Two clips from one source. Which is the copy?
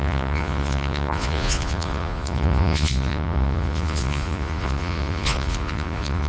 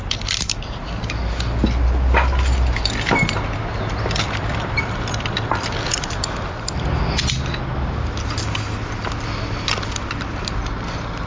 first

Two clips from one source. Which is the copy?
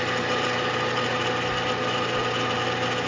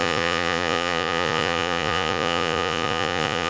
second